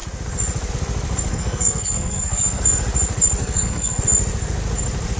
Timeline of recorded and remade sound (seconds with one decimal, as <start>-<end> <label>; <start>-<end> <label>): 0.0-1.3 recorded; 1.3-2.6 remade; 2.6-3.4 recorded; 3.4-4.0 remade; 4.0-5.2 recorded

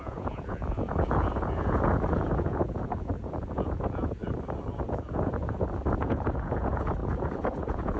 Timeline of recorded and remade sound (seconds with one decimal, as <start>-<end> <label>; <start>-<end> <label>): 0.0-4.2 remade; 4.2-4.7 recorded; 4.7-8.0 remade

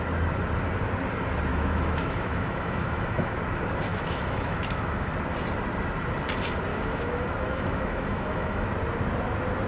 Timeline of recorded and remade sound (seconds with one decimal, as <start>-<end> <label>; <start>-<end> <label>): 0.0-1.5 recorded; 1.5-3.4 remade; 3.4-3.9 recorded; 3.9-5.1 remade; 5.1-6.7 recorded; 6.7-8.7 remade; 8.7-9.7 recorded

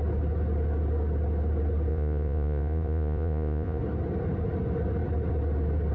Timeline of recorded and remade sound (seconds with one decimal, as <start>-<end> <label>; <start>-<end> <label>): 0.0-1.9 recorded; 1.9-3.8 remade; 3.8-5.9 recorded

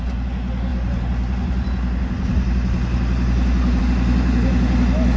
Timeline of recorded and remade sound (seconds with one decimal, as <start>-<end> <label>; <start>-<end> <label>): 0.0-5.2 recorded

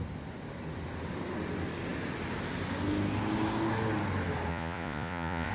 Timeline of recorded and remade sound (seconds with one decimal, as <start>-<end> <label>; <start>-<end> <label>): 0.0-4.5 recorded; 4.5-5.5 remade

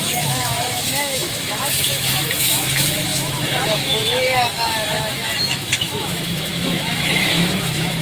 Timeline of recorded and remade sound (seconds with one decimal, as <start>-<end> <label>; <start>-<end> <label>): 0.0-8.0 remade

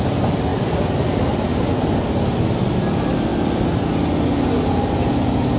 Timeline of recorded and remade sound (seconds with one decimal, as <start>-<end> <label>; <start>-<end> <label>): 0.0-5.6 recorded